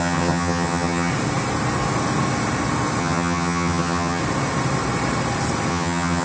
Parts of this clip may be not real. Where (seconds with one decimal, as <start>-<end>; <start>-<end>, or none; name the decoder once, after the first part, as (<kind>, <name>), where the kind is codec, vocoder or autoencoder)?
0.0-1.1 (vocoder, HiFi-GAN); 3.0-4.2; 5.7-6.2